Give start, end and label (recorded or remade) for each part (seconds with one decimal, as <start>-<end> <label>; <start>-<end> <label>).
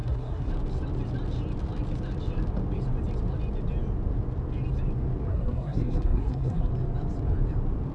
0.0-0.5 remade; 0.5-5.3 recorded; 5.3-6.7 remade; 6.7-7.9 recorded